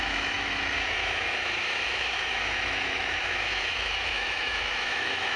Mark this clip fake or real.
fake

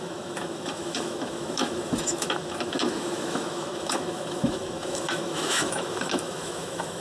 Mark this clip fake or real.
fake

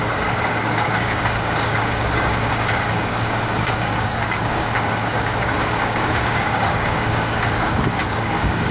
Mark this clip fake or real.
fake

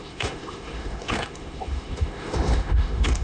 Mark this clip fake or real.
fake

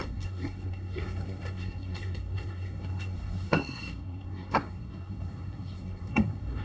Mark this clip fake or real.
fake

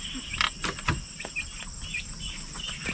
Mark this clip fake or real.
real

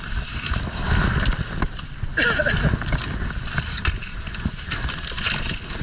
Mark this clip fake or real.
real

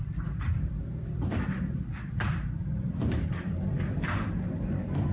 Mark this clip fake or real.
fake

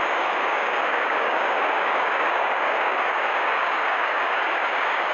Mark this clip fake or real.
fake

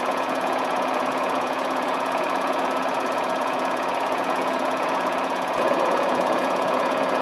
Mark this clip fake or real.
fake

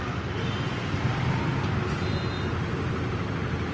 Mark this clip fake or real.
real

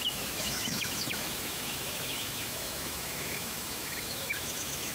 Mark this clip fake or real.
fake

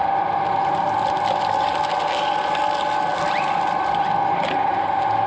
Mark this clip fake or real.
real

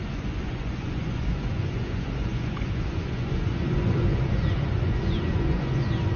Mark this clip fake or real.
fake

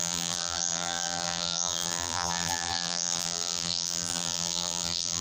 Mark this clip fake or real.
fake